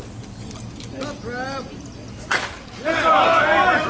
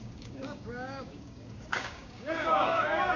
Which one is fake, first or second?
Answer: second